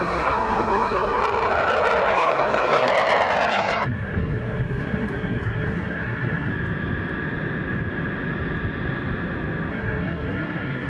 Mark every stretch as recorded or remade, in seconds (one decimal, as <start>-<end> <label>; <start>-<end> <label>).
0.0-1.2 remade; 1.2-2.1 recorded; 2.1-2.9 remade; 2.9-3.5 recorded; 3.5-6.5 remade; 6.5-9.7 recorded; 9.7-10.9 remade